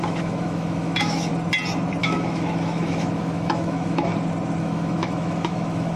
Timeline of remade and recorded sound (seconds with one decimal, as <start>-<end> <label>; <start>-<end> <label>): 0.0-1.3 remade; 1.3-2.0 recorded; 2.0-4.1 remade; 4.1-4.6 recorded; 4.6-6.0 remade